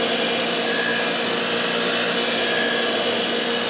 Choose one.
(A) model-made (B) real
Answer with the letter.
B